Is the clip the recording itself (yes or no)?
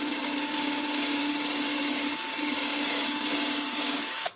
no